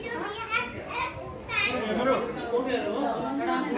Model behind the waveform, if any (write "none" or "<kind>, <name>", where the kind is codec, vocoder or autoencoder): none